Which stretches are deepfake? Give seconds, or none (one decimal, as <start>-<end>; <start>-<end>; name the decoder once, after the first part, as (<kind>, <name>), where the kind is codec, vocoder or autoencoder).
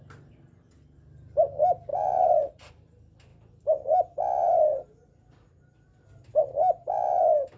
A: 1.9-2.7 (vocoder, Vocos)